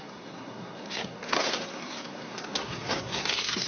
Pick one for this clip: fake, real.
fake